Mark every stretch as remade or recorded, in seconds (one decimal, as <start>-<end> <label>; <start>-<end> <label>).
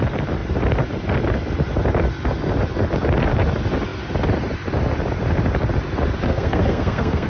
0.0-6.2 recorded; 6.2-7.3 remade